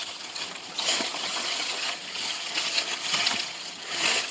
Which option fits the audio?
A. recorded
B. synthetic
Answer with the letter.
B